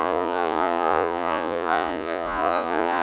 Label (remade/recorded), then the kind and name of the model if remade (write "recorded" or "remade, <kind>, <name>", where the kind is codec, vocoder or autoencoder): remade, vocoder, Vocos